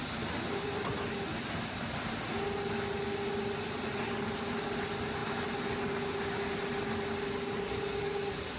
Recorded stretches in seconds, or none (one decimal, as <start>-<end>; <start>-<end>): 0.0-8.6